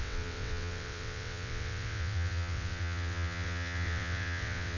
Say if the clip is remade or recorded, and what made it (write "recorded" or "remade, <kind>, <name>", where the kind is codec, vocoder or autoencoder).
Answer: remade, vocoder, WaveNeXt